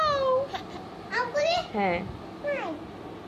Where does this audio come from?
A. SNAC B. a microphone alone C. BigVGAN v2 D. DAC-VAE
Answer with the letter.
B